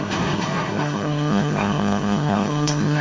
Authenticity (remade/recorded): remade